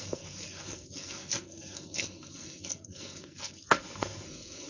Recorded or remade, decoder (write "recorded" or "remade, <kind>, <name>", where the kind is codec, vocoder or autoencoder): remade, codec, SNAC